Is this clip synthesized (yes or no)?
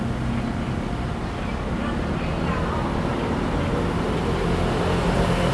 no